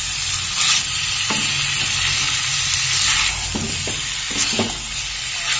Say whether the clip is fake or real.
real